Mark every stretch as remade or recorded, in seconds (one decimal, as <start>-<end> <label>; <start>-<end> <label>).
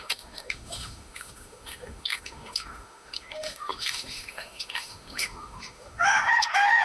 0.0-6.8 remade